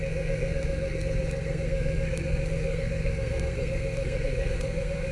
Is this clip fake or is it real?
fake